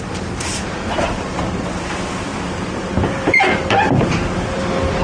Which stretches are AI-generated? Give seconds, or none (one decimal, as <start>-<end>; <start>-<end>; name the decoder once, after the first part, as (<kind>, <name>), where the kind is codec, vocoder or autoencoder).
0.0-5.0 (vocoder, BigVGAN v2)